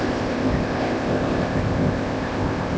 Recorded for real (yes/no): no